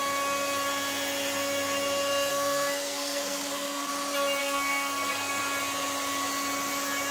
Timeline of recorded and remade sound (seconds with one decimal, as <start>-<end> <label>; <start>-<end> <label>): 0.0-2.3 recorded; 2.3-3.9 remade; 3.9-4.4 recorded; 4.4-5.4 remade; 5.4-7.1 recorded